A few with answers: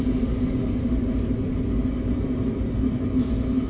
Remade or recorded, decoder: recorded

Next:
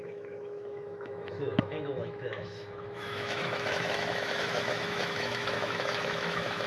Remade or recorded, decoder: remade, autoencoder, DAC-VAE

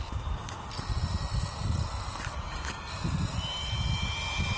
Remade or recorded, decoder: recorded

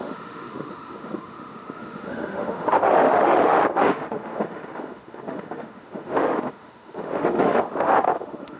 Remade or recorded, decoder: remade, autoencoder, DAC-VAE